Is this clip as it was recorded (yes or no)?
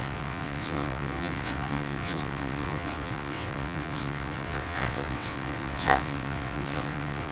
no